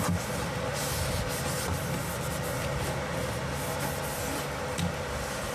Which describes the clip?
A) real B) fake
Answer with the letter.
A